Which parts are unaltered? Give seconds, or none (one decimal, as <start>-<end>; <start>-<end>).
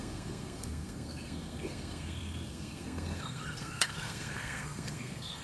none